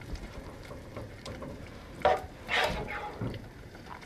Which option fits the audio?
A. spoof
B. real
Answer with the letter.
A